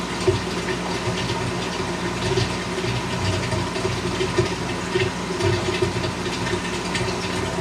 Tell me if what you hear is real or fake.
real